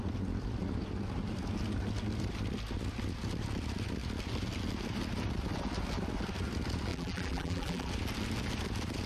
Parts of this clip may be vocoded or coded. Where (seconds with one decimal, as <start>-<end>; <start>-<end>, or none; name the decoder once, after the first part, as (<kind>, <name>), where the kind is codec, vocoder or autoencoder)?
6.9-7.9 (vocoder, BigVGAN v2)